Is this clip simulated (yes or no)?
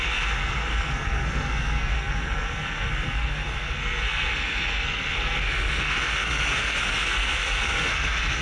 yes